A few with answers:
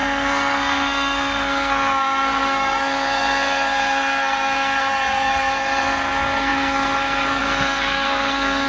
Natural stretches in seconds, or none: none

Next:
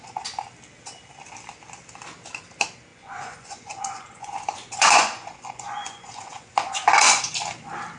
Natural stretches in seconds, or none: 0.0-2.9; 7.2-8.0